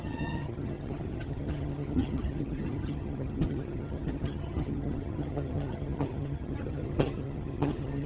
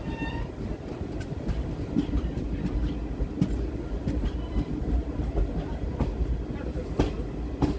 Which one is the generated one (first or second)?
first